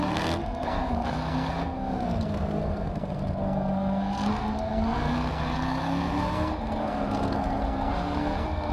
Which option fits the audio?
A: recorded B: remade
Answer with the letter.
B